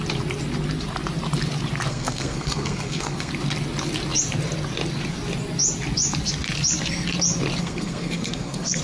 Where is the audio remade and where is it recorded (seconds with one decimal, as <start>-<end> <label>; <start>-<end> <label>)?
0.0-1.9 recorded; 1.9-3.3 remade; 3.3-7.6 recorded; 7.6-8.8 remade

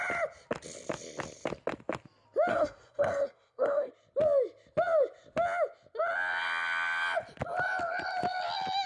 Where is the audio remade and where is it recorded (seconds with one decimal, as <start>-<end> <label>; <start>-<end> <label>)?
0.0-2.5 recorded; 2.5-3.9 remade; 3.9-8.9 recorded